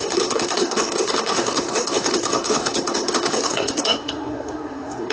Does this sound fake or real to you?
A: fake